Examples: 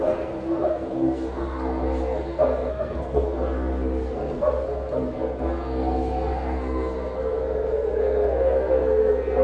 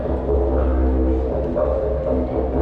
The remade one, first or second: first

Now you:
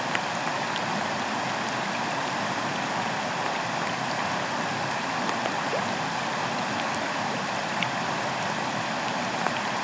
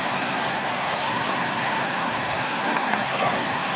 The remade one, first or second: second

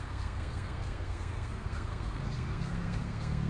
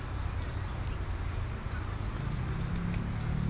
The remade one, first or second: first